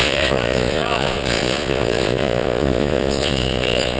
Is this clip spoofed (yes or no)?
yes